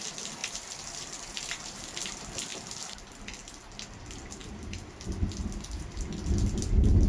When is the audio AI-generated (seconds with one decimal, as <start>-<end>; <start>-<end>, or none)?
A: 0.4-2.0; 4.4-4.9